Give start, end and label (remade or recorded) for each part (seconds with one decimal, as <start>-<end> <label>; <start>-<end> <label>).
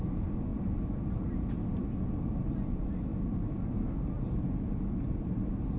0.0-5.8 recorded